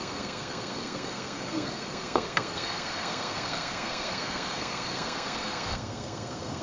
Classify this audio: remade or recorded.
remade